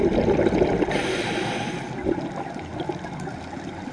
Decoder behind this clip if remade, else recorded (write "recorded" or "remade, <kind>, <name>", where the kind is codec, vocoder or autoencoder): recorded